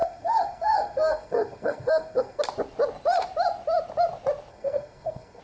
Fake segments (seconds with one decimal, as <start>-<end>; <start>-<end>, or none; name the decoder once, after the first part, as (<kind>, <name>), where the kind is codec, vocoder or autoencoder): 0.0-2.4 (codec, SNAC); 4.5-5.4